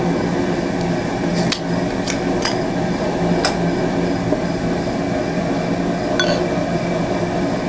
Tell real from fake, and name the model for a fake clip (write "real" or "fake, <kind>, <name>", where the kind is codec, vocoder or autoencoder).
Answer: real